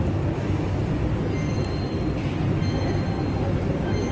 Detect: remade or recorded recorded